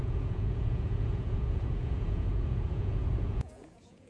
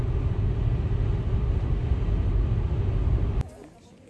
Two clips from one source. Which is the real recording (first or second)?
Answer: second